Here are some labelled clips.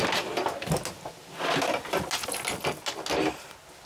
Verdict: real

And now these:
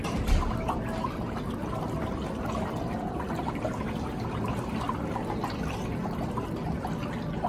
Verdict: real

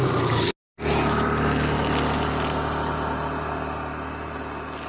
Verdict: real